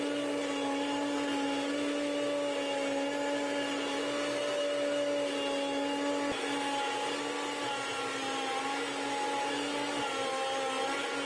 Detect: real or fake real